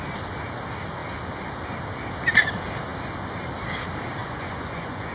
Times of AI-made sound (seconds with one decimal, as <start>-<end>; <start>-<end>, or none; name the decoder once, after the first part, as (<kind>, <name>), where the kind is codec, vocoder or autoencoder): 4.2-5.1 (vocoder, Vocos)